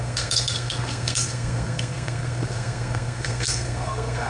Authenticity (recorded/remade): remade